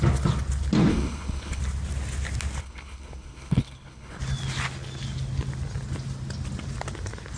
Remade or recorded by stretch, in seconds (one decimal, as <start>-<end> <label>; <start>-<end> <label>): 0.0-0.9 recorded; 0.9-1.6 remade; 1.6-2.6 recorded; 2.6-4.2 remade; 4.2-7.4 recorded